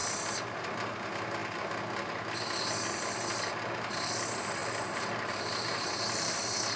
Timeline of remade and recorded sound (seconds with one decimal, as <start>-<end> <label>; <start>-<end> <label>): 0.0-6.8 recorded